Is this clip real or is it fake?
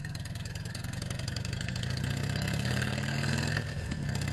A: fake